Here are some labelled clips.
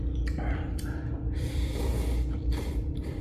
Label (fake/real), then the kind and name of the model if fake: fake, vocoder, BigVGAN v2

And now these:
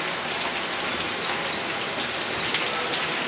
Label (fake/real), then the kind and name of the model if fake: real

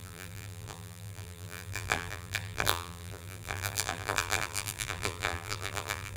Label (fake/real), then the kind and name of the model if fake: fake, vocoder, BigVGAN v2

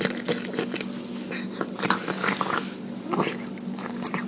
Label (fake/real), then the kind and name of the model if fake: real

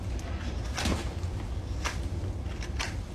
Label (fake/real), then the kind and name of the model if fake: real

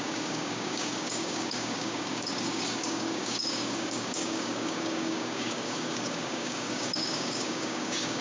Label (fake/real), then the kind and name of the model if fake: fake, codec, DAC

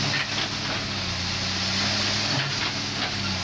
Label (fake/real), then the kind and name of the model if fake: real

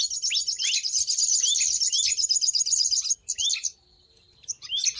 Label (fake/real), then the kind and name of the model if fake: real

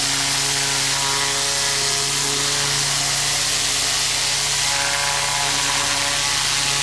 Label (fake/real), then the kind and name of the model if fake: real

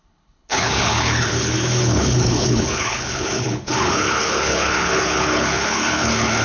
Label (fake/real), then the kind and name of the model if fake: fake, codec, HILCodec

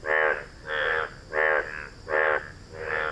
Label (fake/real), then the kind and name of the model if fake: real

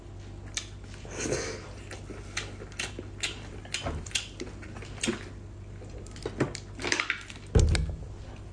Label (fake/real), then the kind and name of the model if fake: real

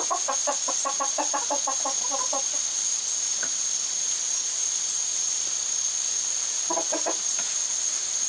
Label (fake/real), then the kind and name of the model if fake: real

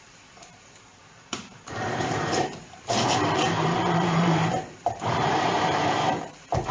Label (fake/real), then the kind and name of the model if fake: fake, vocoder, BigVGAN v2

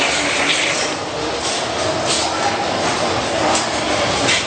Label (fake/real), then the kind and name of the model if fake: real